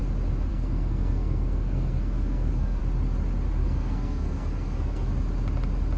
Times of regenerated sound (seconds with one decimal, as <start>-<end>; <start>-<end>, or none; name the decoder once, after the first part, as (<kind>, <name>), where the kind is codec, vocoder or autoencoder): 0.5-2.8 (codec, SNAC); 3.6-5.1